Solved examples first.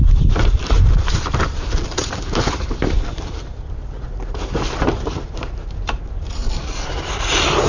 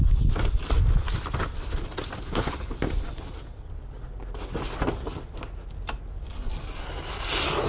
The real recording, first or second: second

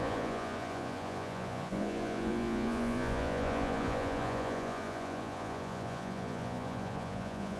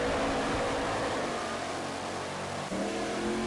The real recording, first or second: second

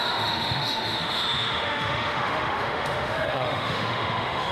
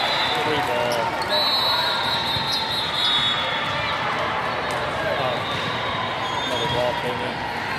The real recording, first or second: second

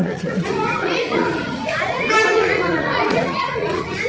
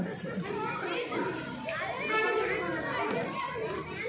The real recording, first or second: second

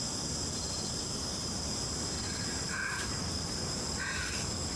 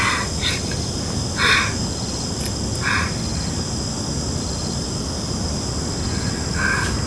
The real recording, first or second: second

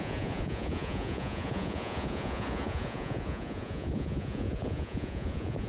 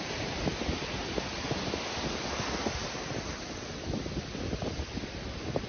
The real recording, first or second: second